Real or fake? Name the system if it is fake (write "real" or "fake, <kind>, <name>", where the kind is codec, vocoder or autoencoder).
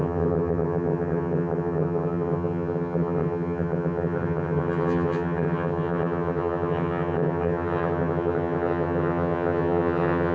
fake, vocoder, HiFi-GAN